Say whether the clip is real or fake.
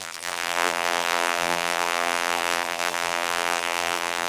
fake